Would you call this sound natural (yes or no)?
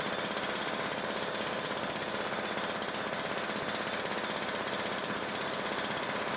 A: yes